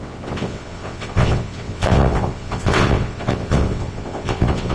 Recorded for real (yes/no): no